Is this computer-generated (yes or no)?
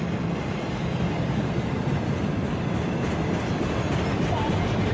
no